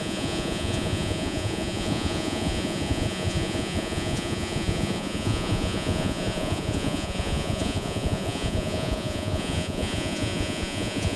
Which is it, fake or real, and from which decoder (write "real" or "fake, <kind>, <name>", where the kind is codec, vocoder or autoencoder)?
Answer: fake, vocoder, Vocos